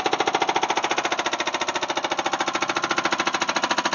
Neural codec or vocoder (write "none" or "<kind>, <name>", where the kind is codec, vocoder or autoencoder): none